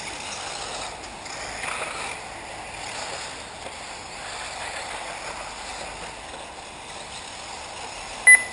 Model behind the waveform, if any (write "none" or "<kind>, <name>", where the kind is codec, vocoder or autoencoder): none